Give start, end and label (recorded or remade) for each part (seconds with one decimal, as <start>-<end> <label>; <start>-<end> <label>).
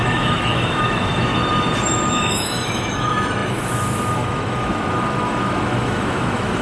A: 0.0-1.3 remade; 1.3-2.1 recorded; 2.1-6.6 remade